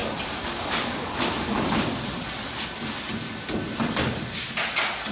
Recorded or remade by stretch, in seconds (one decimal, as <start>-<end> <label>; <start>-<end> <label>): 0.0-3.1 remade; 3.1-5.1 recorded